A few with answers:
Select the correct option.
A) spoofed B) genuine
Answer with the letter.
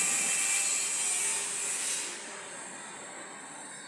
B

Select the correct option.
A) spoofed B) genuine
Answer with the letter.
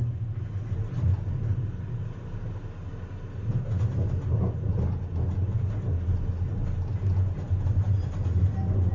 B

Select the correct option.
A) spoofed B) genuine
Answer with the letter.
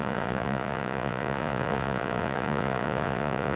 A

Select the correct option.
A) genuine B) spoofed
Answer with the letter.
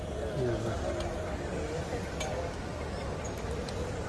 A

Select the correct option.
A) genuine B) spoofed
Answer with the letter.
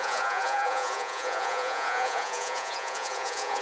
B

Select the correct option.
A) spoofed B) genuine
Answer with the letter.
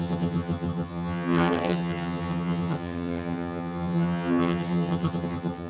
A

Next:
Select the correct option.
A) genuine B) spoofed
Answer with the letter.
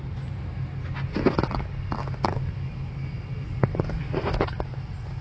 A